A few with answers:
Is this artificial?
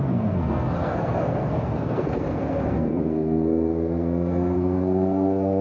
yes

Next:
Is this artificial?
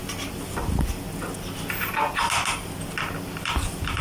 no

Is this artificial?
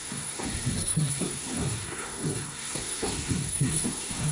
yes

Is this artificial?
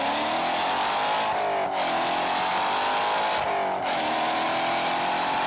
no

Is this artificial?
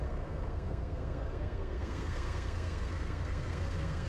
yes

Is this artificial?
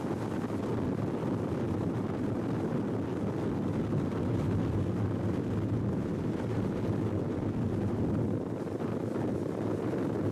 no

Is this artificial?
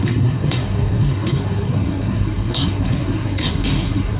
yes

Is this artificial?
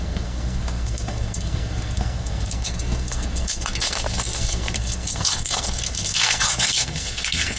yes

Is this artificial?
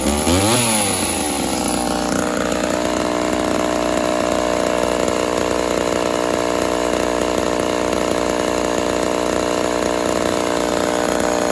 no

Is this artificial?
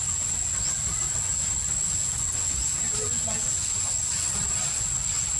no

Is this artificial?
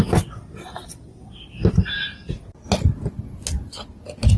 no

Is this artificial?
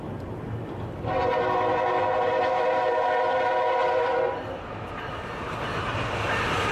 no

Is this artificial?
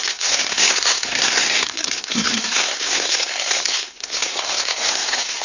yes